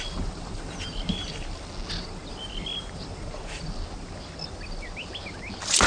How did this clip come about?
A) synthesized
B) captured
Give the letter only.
B